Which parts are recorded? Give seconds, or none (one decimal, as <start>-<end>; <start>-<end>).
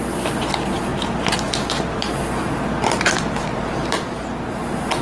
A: 0.0-0.9; 3.9-5.0